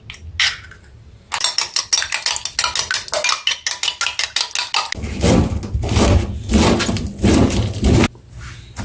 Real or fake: real